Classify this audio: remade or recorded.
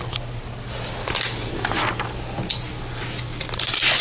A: recorded